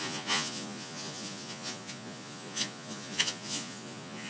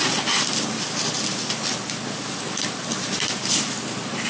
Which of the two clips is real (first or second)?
second